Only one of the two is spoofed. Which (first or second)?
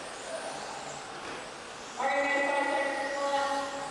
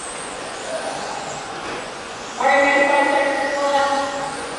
second